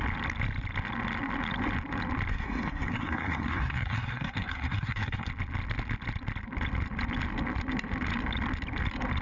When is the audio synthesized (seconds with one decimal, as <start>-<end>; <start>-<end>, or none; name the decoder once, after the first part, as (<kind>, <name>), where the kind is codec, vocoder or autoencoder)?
2.3-5.3 (codec, SNAC)